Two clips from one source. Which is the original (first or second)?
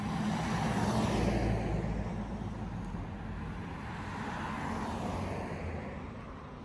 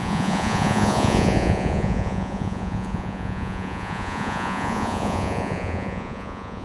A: first